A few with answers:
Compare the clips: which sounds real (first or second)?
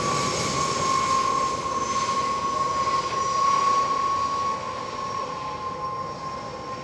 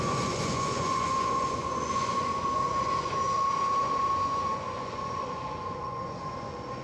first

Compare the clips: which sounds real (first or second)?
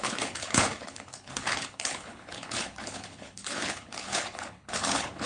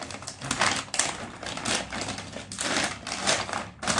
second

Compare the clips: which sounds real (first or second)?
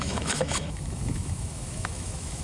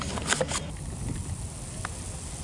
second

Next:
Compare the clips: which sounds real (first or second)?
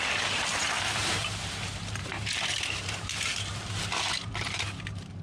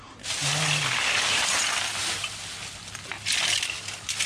second